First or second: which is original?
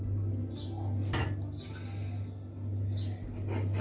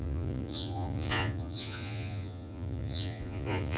first